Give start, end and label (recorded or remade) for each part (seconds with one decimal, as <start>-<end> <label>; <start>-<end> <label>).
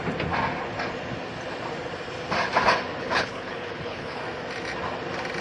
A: 0.0-3.0 recorded; 3.0-4.2 remade; 4.2-5.4 recorded